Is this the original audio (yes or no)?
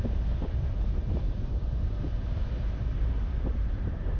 no